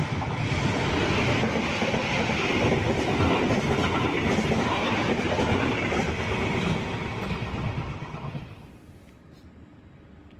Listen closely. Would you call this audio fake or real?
real